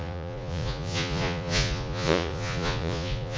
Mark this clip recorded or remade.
remade